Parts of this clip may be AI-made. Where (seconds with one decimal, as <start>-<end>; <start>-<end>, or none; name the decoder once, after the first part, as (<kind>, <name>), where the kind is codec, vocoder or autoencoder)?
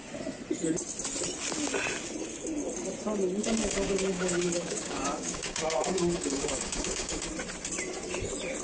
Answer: 3.4-7.3 (codec, DAC)